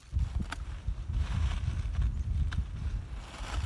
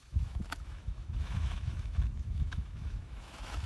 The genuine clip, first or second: first